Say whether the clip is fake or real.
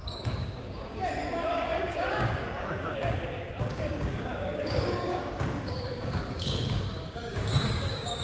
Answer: fake